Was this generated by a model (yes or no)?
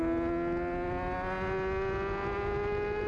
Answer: no